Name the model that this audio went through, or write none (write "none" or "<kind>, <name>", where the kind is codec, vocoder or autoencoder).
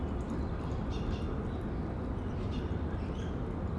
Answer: none